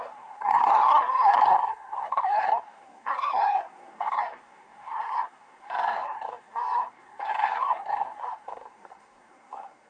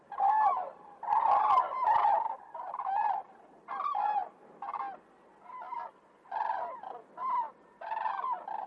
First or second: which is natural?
second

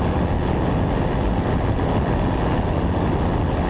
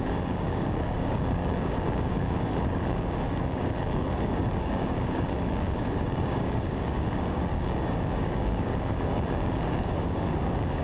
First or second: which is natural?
first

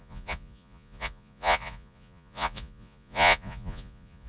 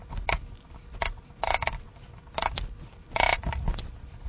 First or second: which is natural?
second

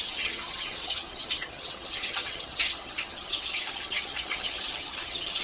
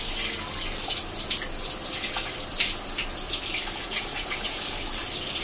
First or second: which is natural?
second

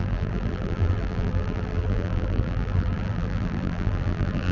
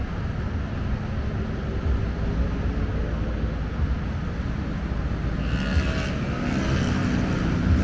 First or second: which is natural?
second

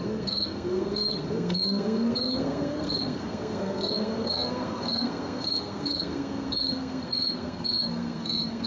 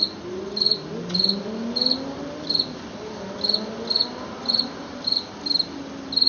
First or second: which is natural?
second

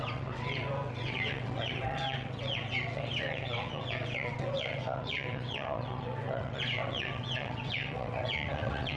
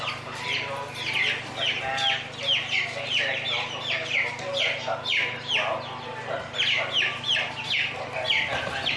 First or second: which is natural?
second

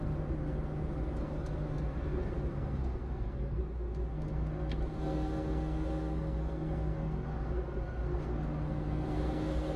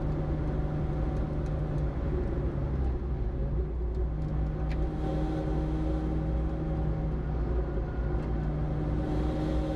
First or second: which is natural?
second